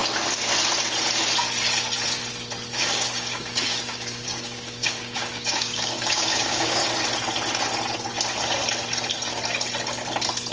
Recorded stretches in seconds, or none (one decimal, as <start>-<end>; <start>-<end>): 0.0-2.7; 6.8-10.5